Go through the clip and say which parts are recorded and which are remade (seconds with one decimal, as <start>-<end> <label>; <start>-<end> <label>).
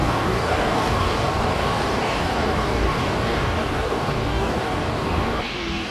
0.0-5.9 remade